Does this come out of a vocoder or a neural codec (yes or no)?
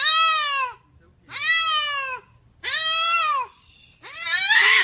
no